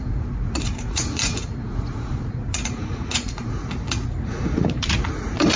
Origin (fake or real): fake